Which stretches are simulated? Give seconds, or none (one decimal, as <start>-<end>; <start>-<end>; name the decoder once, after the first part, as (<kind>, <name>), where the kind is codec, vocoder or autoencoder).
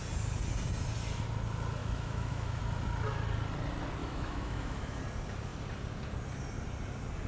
1.8-2.6 (autoencoder, DAC-VAE); 4.0-5.0